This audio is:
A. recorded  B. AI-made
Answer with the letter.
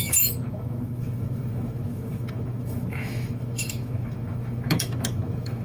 B